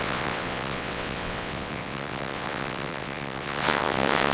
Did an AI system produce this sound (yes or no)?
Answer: yes